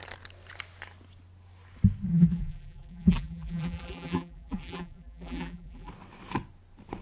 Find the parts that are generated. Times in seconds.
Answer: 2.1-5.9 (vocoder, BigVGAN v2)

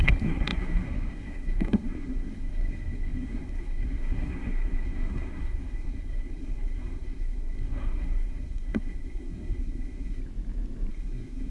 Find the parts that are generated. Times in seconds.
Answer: 0.0-10.2 (codec, SNAC); 10.9-11.5

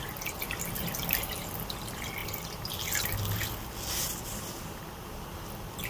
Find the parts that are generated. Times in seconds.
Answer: none

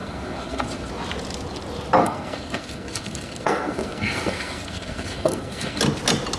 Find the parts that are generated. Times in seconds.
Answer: 0.0-0.9 (codec, SNAC); 2.0-5.8

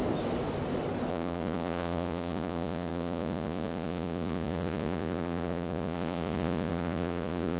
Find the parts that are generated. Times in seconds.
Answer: 1.1-7.6 (vocoder, Vocos)